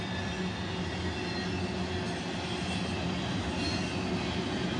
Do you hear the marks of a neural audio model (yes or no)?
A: no